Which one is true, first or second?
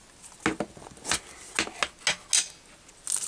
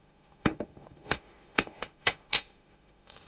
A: first